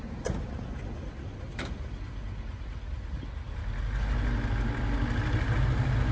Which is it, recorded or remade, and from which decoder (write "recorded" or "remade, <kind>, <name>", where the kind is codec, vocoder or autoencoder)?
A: recorded